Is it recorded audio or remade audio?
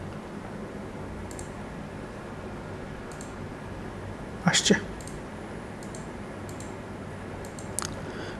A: recorded